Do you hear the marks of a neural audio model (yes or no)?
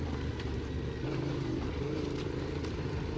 no